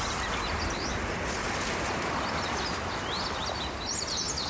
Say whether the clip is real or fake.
real